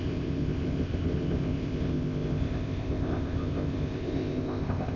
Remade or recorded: remade